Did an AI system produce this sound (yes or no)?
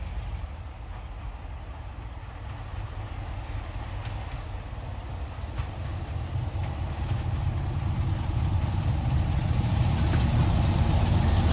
no